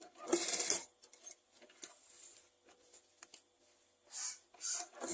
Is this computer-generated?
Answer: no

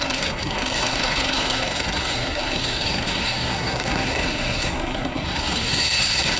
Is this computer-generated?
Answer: yes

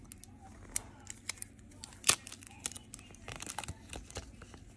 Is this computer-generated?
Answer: no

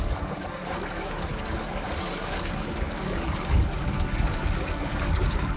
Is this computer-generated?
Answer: yes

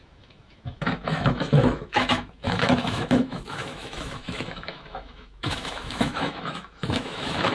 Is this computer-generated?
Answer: yes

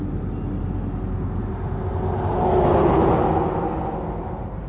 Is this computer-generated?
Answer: no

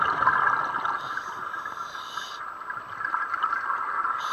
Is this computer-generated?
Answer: no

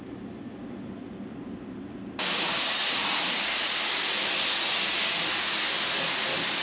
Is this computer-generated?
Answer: no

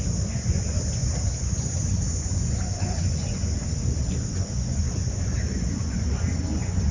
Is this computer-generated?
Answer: yes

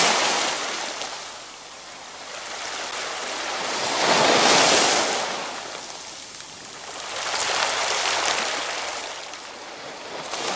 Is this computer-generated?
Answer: no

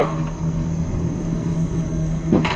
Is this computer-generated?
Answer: yes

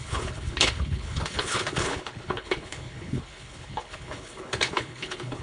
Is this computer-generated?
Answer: yes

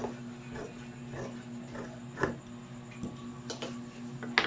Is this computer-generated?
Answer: no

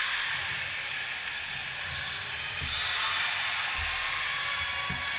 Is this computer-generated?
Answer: no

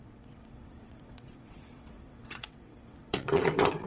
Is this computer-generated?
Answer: yes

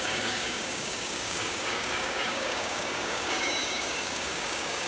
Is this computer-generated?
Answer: yes